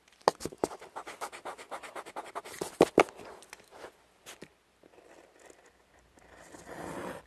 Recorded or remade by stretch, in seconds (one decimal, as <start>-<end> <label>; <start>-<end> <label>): 0.0-7.3 recorded